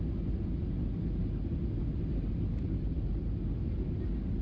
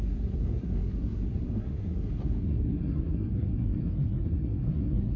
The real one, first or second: first